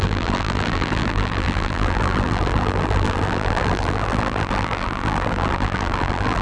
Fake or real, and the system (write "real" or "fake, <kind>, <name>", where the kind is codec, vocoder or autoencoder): fake, vocoder, BigVGAN v2